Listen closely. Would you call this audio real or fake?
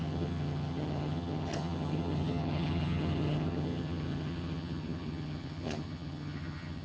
fake